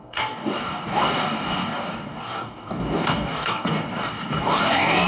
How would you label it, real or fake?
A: fake